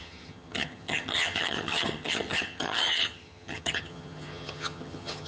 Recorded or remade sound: remade